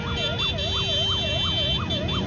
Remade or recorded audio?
recorded